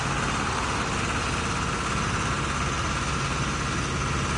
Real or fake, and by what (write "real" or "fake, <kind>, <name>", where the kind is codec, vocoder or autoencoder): real